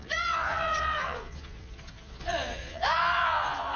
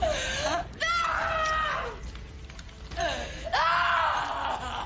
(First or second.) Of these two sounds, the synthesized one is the first